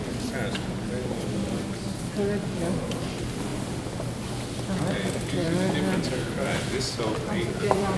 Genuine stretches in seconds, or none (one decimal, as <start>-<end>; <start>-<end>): 0.0-5.4